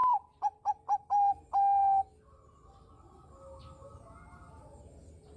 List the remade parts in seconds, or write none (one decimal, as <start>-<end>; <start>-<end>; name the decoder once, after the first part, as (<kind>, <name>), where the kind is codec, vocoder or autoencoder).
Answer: none